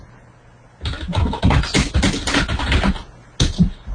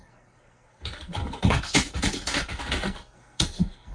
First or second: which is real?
first